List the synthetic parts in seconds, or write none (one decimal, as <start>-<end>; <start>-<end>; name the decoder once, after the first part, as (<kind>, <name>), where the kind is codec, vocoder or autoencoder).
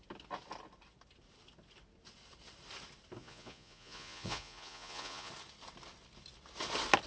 3.2-5.3 (vocoder, Vocos)